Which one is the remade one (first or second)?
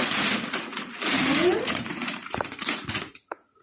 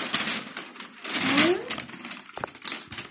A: first